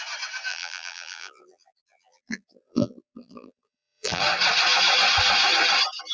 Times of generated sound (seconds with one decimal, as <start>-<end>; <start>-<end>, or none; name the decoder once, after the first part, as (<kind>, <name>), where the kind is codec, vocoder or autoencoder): 0.5-4.2 (vocoder, BigVGAN v2)